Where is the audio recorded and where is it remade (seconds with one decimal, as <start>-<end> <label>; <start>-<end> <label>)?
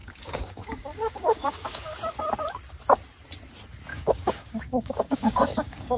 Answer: 0.0-2.0 remade; 2.0-3.9 recorded; 3.9-6.0 remade